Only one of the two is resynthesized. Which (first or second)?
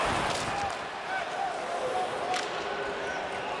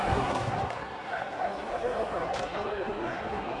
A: second